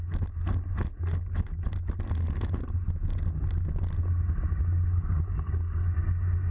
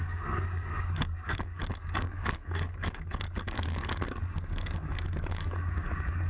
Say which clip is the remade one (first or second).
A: second